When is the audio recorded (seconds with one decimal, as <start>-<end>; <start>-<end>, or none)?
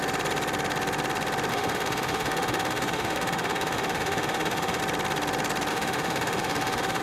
0.0-1.5; 4.8-5.7